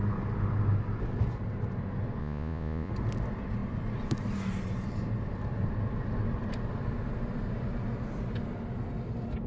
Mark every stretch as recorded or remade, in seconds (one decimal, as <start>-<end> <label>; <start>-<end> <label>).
0.0-2.2 recorded; 2.2-2.9 remade; 2.9-9.5 recorded